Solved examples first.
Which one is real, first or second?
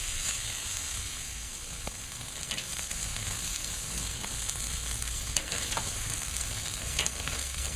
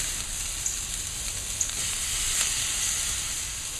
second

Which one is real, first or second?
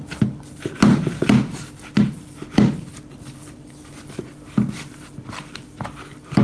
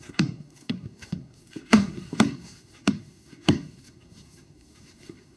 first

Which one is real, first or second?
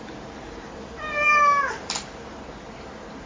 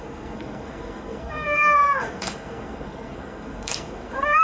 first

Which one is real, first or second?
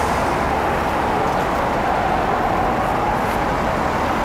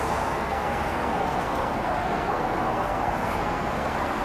first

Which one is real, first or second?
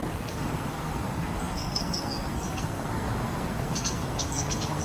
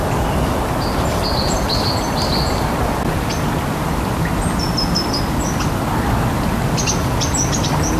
second